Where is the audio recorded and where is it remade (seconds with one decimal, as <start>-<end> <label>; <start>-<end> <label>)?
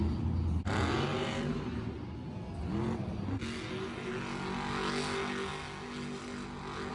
0.0-6.9 recorded